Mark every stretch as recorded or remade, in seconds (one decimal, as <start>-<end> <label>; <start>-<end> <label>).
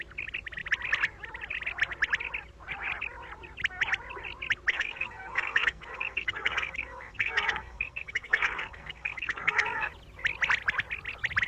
0.0-4.7 recorded; 4.7-9.9 remade; 9.9-11.5 recorded